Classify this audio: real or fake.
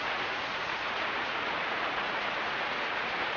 fake